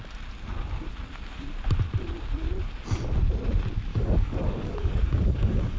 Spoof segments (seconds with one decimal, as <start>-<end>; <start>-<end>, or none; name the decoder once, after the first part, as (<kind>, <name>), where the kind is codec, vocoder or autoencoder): 3.9-5.8 (codec, DAC)